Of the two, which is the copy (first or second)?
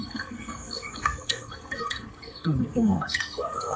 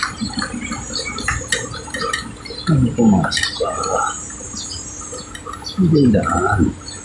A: first